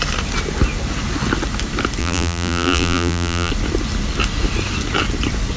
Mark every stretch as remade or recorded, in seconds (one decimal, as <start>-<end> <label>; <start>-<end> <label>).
0.0-2.0 recorded; 2.0-3.5 remade; 3.5-5.6 recorded